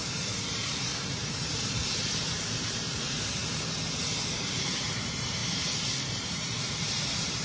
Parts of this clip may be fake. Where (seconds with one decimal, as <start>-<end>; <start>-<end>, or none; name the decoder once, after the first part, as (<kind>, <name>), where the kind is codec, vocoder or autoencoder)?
0.0-3.4 (vocoder, BigVGAN v2); 4.0-7.4